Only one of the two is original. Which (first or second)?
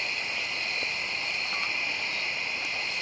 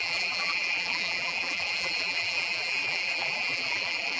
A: first